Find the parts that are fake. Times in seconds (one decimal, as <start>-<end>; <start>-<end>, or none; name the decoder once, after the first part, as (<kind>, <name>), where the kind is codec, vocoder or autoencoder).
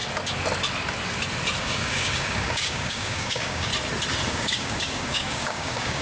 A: 1.6-3.7 (codec, DAC); 4.3-6.0